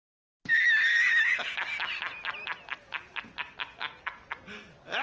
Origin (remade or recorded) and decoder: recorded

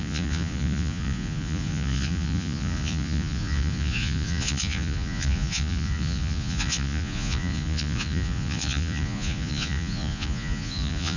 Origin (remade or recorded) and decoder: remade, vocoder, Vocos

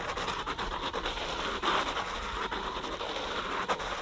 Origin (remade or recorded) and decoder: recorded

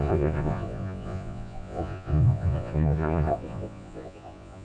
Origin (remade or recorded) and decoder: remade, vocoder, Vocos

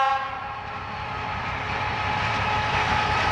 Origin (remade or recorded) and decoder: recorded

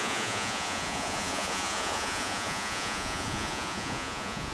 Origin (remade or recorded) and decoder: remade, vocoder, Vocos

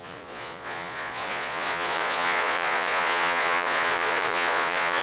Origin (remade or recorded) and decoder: remade, vocoder, Vocos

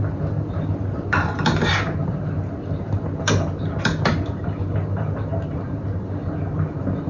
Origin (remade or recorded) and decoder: recorded